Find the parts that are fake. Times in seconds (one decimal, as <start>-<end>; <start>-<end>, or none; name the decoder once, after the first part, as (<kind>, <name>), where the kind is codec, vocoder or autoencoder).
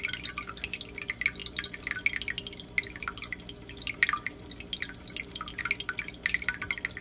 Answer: none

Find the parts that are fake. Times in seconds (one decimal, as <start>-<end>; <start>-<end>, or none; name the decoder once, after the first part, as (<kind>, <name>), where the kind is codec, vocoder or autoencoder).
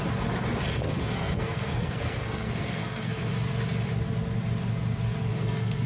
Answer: 1.0-3.3 (codec, SNAC); 5.3-5.9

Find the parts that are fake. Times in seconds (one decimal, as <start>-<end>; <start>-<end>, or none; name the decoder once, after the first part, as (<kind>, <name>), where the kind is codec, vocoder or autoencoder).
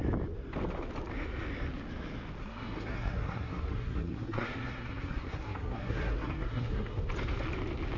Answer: 2.4-7.0 (codec, SNAC)